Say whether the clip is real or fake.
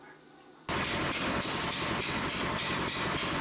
real